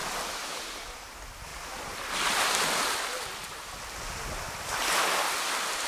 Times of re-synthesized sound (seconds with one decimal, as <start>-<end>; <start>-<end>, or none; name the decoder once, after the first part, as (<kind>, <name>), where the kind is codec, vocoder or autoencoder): 0.0-1.0 (vocoder, BigVGAN v2)